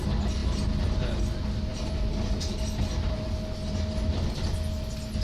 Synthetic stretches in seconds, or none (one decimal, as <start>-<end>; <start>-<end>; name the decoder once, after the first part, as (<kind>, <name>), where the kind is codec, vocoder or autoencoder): none